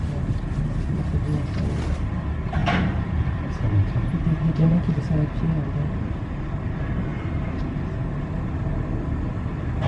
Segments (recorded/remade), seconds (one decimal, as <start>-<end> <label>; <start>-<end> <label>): 0.0-2.6 recorded; 2.6-5.0 remade; 5.0-7.1 recorded; 7.1-7.8 remade; 7.8-9.9 recorded